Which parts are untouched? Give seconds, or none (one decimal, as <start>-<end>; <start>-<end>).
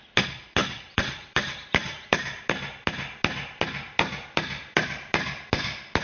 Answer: 0.0-0.6; 2.4-6.0